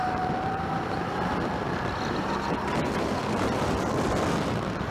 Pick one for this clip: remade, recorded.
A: remade